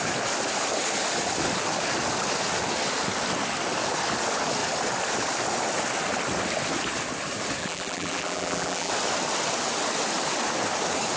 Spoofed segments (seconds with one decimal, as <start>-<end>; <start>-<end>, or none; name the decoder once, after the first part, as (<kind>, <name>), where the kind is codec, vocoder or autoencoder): 7.6-8.9 (vocoder, BigVGAN v2)